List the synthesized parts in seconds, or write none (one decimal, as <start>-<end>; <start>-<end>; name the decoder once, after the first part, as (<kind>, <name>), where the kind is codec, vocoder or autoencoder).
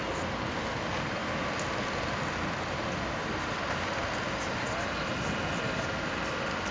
none